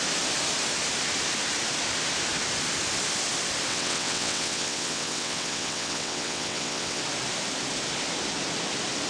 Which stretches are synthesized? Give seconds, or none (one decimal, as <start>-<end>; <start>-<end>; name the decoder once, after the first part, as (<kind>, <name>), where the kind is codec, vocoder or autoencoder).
3.7-7.0 (vocoder, WaveNeXt)